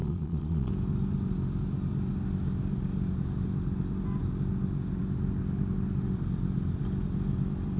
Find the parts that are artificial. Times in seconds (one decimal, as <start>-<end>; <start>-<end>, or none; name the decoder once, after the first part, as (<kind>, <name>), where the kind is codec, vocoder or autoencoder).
0.0-0.7 (vocoder, Vocos)